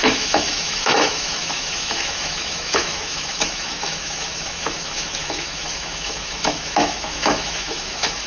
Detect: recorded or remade remade